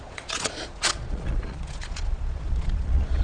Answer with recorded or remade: remade